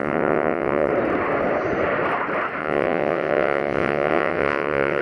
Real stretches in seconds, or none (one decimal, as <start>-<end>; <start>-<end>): 0.9-2.6